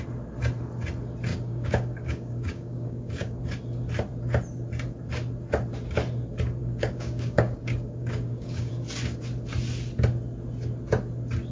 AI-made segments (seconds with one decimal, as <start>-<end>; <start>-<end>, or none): 1.3-3.4; 6.6-8.7